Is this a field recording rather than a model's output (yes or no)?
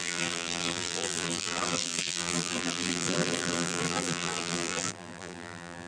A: no